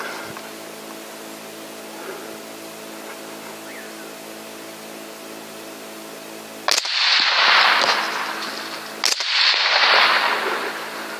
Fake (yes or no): no